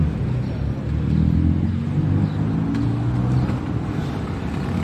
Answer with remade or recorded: recorded